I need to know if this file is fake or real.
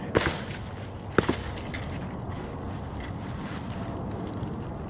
real